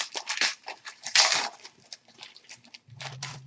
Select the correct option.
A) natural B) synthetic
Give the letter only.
B